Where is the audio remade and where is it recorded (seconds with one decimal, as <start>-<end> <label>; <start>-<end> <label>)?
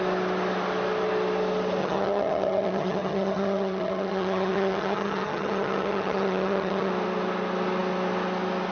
0.0-1.8 recorded; 1.8-6.9 remade; 6.9-8.7 recorded